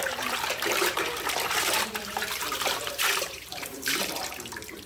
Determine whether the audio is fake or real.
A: fake